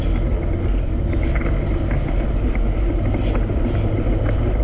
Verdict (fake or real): real